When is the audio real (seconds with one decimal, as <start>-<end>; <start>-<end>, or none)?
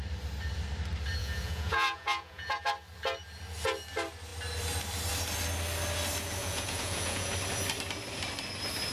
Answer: 0.0-1.2; 2.7-6.4; 7.3-8.9